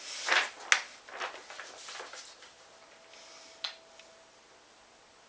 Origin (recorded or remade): recorded